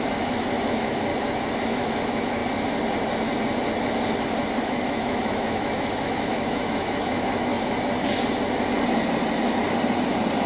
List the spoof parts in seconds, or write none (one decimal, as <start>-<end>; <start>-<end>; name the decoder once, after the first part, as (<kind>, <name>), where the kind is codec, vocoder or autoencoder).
0.0-1.1 (autoencoder, DAC-VAE); 1.6-2.4; 4.6-7.5